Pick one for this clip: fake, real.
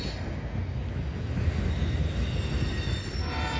real